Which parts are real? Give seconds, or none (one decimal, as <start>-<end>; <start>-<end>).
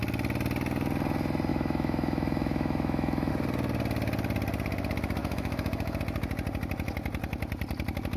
0.0-1.5; 3.3-5.2; 6.0-8.2